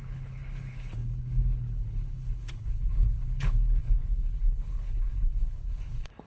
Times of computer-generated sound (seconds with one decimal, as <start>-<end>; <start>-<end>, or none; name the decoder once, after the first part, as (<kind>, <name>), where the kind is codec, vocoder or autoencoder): 0.0-6.3 (codec, HILCodec)